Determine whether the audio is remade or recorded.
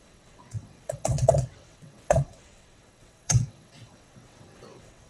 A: remade